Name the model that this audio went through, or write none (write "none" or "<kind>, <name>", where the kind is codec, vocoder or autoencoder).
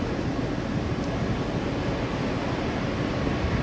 none